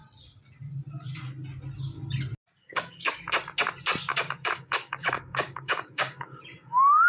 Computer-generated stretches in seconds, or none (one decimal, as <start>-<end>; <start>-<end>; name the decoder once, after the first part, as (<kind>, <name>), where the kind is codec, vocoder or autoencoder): 2.6-3.1 (codec, DAC); 4.1-6.4